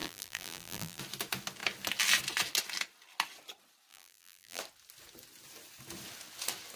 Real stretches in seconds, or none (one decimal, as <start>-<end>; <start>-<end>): 1.0-3.9; 4.6-6.8